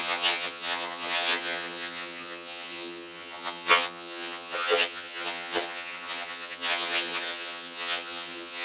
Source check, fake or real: fake